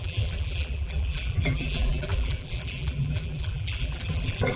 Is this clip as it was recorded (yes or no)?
no